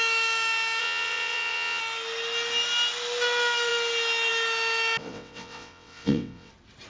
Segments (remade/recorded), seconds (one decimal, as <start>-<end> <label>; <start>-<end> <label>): 0.0-0.8 recorded; 0.8-1.8 remade; 1.8-5.0 recorded; 5.0-6.5 remade; 6.5-6.9 recorded